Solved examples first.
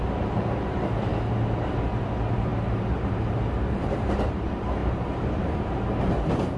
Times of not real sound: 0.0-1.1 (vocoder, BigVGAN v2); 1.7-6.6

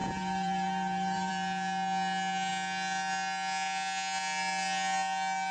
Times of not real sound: 0.0-1.3 (vocoder, BigVGAN v2)

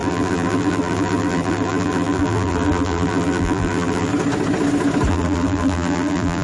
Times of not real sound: 0.0-4.1 (vocoder, BigVGAN v2); 5.1-6.4

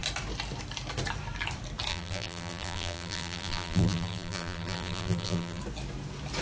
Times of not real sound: 1.9-5.6 (vocoder, BigVGAN v2)